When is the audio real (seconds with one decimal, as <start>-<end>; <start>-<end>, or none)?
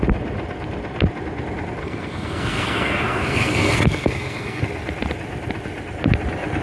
0.0-1.8; 4.6-6.6